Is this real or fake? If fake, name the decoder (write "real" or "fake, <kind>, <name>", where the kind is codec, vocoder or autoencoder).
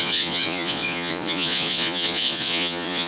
fake, vocoder, Vocos